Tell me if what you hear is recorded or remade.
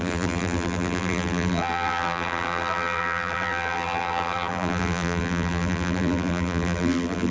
remade